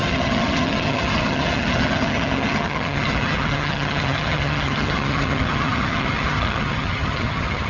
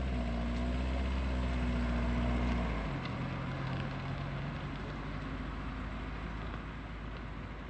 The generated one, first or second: first